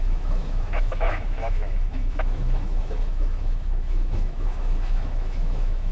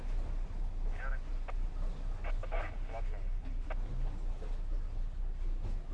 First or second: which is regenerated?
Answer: first